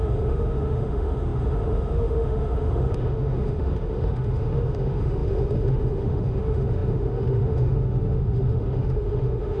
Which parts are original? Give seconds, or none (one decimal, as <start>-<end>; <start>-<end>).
none

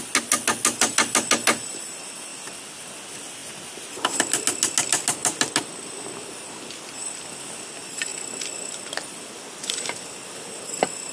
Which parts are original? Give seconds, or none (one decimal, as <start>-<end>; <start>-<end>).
0.0-11.1

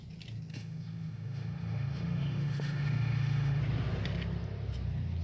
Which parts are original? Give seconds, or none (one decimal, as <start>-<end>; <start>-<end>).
0.0-0.5; 3.6-5.2

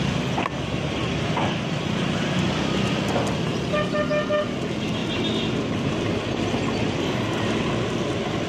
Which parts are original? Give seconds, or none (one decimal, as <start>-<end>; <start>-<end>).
0.0-8.5

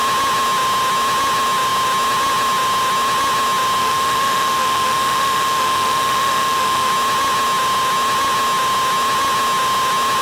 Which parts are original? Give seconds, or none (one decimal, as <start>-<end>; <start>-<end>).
0.0-3.8; 6.9-10.2

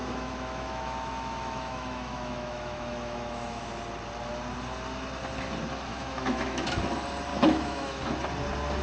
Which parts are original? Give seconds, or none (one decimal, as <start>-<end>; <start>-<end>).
3.6-5.9; 6.8-7.3; 8.0-8.8

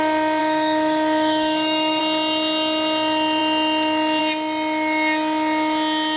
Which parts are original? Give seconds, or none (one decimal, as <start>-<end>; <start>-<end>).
0.0-0.4; 2.0-6.2

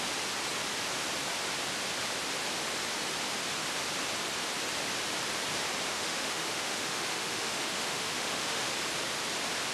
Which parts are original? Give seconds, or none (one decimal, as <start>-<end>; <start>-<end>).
0.0-5.9; 8.7-9.7